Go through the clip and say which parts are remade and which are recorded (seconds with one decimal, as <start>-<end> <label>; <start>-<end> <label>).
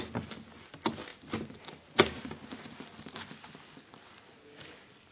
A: 0.0-5.1 recorded